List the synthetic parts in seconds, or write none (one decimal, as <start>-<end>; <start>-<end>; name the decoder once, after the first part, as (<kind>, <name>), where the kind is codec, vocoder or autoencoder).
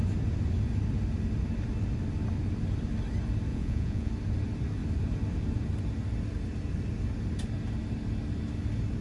3.5-4.1 (vocoder, Vocos)